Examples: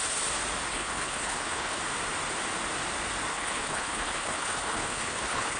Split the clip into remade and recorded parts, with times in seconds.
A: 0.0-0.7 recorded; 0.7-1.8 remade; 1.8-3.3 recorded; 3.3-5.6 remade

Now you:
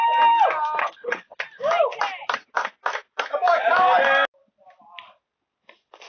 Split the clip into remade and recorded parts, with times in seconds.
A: 0.0-0.8 recorded; 0.8-1.4 remade; 1.4-6.1 recorded